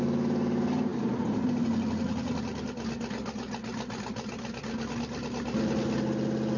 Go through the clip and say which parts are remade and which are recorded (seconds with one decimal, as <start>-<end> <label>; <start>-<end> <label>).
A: 0.0-6.6 recorded